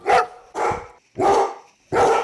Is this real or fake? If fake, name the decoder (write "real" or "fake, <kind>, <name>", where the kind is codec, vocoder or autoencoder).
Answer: real